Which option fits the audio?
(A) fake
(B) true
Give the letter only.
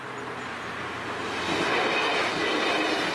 B